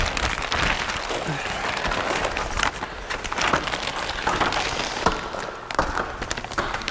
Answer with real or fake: real